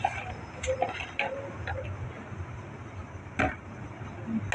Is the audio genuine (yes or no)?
yes